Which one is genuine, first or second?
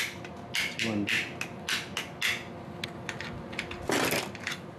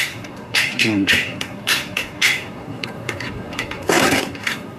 first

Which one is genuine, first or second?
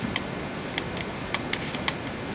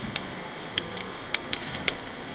first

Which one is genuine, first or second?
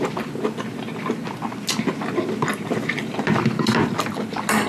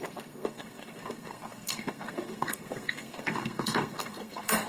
first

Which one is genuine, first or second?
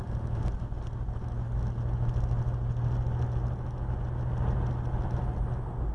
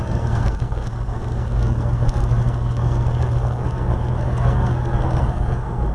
first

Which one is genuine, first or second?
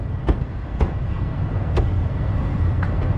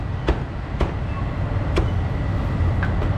second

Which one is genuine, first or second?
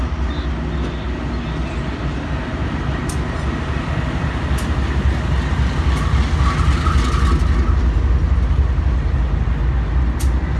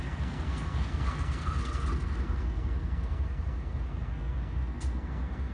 first